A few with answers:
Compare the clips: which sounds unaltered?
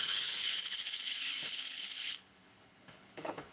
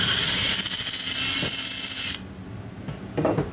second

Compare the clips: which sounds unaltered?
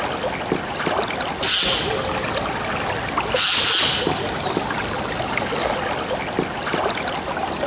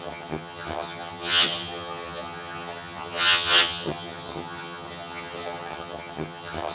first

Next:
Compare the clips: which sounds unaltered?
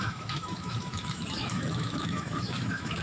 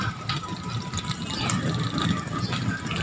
second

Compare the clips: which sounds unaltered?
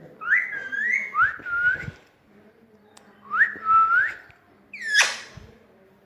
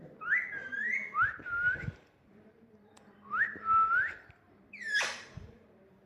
first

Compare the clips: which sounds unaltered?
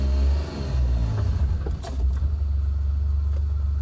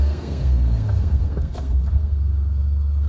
first